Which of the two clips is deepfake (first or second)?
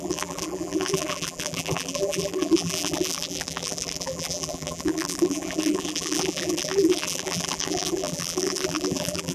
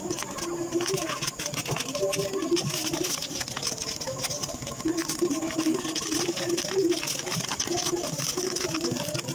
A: first